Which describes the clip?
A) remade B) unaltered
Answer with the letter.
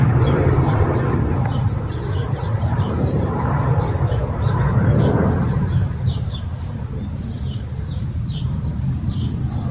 A